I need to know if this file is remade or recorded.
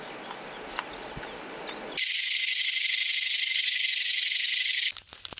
recorded